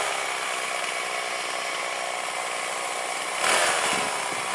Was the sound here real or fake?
real